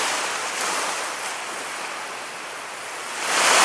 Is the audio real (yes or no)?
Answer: yes